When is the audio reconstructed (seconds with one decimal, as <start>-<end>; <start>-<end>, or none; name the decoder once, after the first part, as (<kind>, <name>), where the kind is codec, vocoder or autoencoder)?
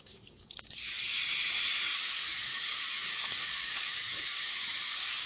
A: 0.0-1.2 (codec, DAC); 1.7-5.3